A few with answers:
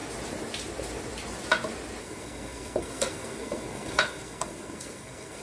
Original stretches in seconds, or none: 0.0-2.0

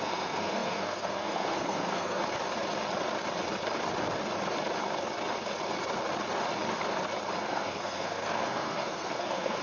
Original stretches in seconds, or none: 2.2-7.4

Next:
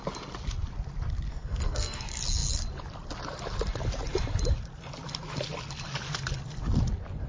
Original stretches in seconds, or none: 0.0-1.3; 2.0-7.3

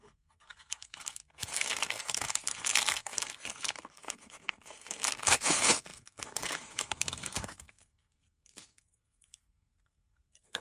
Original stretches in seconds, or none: none

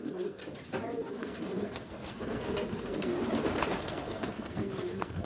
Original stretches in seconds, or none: 0.4-1.1; 3.1-3.8

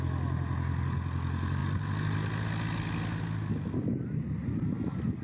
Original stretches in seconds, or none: 0.0-5.2